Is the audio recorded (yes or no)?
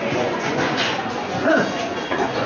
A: no